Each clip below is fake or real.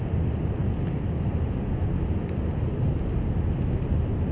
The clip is real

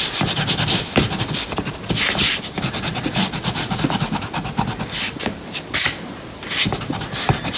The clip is real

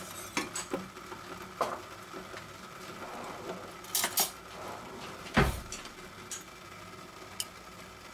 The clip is real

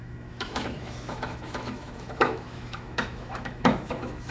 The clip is fake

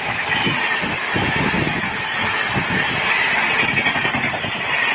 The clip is real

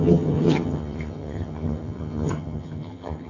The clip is fake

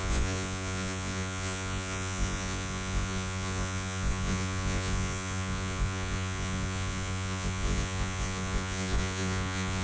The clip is fake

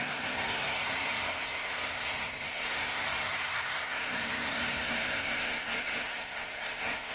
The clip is fake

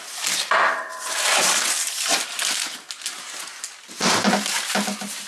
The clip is real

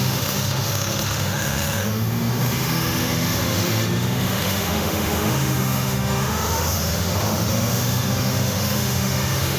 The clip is fake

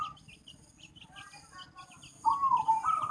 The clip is real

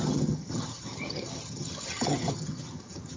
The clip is fake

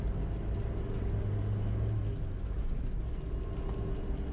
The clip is real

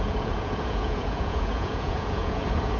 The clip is fake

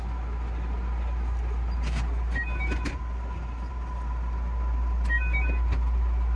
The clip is real